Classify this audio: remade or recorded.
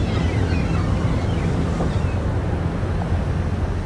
recorded